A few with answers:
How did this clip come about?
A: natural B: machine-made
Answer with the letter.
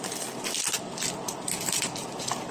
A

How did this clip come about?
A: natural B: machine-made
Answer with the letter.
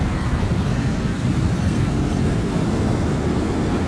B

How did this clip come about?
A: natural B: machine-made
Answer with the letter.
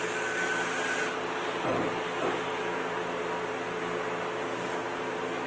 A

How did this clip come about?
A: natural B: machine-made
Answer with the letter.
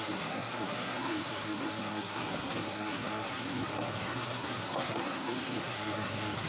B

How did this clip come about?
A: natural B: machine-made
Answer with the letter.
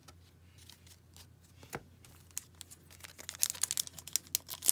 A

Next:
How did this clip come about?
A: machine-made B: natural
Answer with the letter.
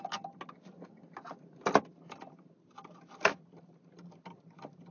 B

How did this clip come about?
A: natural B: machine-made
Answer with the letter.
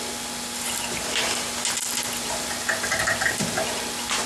A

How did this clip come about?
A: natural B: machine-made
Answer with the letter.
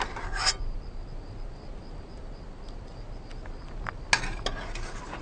A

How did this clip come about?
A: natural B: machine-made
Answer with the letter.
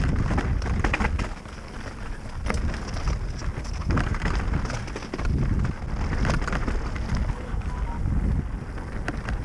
A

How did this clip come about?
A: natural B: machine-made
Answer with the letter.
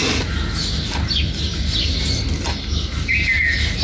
A